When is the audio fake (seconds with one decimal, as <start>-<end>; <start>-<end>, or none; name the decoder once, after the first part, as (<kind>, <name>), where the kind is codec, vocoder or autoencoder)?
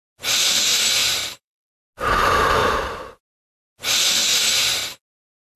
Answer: 1.0-1.7 (vocoder, BigVGAN v2); 2.6-3.3